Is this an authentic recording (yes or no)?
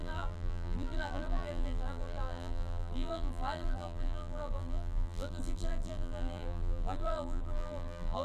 no